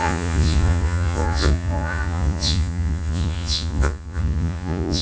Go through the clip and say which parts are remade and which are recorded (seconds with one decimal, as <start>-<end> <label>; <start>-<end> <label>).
0.0-5.0 remade